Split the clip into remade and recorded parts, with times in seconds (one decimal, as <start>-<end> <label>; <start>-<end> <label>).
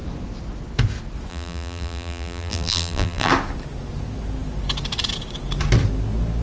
0.0-1.3 recorded; 1.3-3.3 remade; 3.3-6.4 recorded